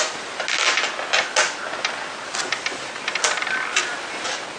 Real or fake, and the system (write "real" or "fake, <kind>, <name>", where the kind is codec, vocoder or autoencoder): real